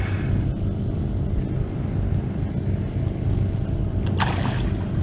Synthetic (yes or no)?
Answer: no